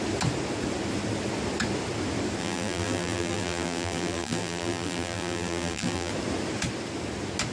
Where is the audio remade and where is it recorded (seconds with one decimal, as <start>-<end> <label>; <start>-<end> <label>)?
0.0-2.4 recorded; 2.4-6.1 remade; 6.1-7.5 recorded

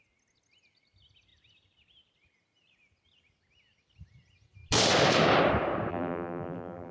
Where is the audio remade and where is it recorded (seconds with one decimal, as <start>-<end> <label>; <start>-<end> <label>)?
0.0-5.9 recorded; 5.9-6.9 remade

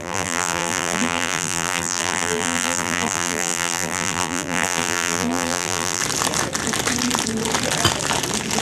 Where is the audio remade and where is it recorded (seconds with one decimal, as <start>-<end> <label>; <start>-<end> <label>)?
0.0-6.0 remade; 6.0-8.6 recorded

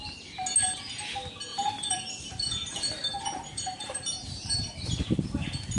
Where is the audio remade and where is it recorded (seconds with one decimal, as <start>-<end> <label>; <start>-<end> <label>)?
0.0-1.5 recorded; 1.5-5.0 remade; 5.0-5.8 recorded

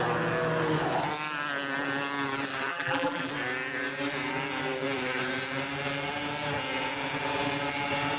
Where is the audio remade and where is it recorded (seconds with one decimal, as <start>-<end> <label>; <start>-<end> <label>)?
0.0-2.7 recorded; 2.7-3.3 remade; 3.3-8.2 recorded

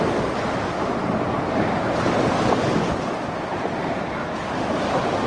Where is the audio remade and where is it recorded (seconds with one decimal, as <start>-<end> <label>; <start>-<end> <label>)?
0.0-3.5 recorded; 3.5-4.4 remade; 4.4-5.3 recorded